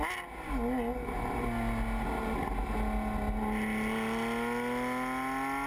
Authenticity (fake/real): real